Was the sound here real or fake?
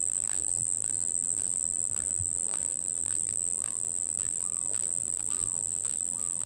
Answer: fake